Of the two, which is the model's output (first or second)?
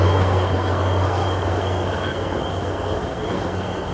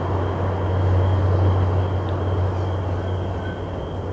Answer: first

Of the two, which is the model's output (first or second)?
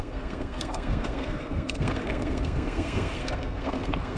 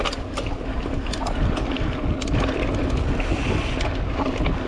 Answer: first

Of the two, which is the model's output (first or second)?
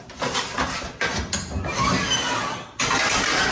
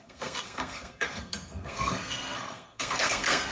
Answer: second